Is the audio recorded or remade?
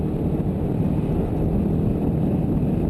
recorded